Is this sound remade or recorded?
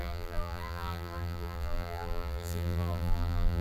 remade